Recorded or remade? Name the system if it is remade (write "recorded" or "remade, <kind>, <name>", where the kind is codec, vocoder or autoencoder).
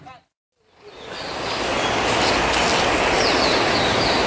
recorded